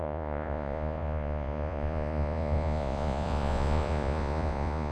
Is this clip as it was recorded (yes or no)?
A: no